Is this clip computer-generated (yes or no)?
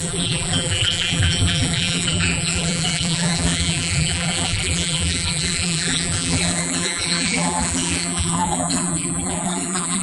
yes